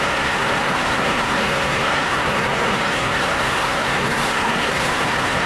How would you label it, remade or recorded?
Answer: remade